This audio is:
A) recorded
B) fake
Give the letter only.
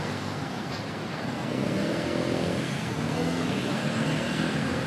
B